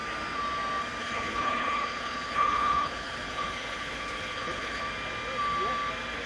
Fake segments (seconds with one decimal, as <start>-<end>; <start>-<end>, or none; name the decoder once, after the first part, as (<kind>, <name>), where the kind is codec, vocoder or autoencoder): 1.0-4.8 (codec, HILCodec)

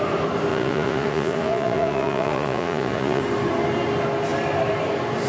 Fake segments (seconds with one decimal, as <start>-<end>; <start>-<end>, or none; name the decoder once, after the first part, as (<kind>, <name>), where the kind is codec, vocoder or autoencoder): 0.5-3.2 (vocoder, Vocos)

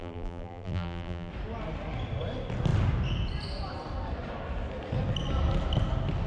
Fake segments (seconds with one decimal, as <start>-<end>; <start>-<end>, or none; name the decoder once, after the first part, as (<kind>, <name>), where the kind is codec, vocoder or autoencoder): 0.0-1.3 (vocoder, BigVGAN v2)

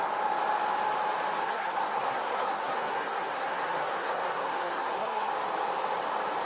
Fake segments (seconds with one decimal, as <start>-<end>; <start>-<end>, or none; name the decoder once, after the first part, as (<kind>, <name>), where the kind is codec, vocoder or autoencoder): 1.4-5.3 (codec, SNAC)

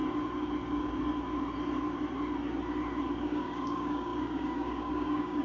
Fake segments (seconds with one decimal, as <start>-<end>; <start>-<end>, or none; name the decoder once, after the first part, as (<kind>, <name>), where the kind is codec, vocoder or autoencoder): 3.2-5.4 (codec, DAC)

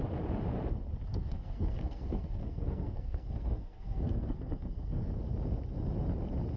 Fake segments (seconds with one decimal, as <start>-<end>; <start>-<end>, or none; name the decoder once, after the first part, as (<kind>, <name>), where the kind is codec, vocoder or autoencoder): 1.1-5.1 (codec, SNAC)

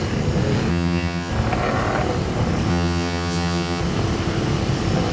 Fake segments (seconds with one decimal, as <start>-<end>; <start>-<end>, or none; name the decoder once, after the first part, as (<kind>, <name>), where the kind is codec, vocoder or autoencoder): 0.7-1.3 (vocoder, HiFi-GAN); 2.7-3.8

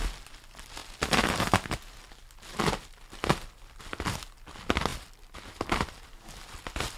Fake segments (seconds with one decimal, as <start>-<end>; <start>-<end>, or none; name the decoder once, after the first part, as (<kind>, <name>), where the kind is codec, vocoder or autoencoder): none